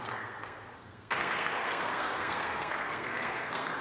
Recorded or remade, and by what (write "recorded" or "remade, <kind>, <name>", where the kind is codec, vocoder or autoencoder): remade, codec, SNAC